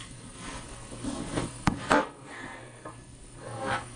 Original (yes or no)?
no